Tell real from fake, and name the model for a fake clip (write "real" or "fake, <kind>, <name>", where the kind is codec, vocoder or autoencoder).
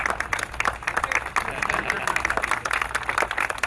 real